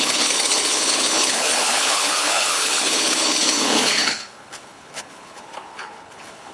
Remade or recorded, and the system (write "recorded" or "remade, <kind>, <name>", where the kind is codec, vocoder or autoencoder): remade, codec, HILCodec